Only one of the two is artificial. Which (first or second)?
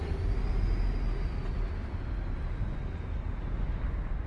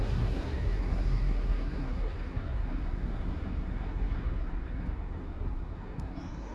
second